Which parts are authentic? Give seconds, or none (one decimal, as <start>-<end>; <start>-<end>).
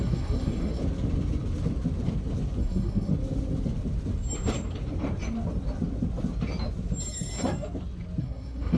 0.8-2.6; 3.1-8.2